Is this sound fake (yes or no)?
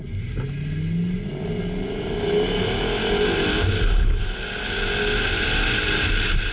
no